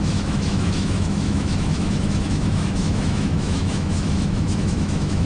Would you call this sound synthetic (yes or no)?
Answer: yes